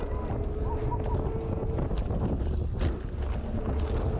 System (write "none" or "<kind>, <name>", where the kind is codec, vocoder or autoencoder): none